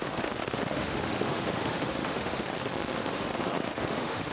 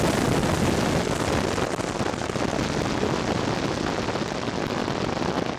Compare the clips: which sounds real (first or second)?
second